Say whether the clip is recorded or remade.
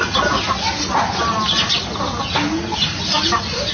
recorded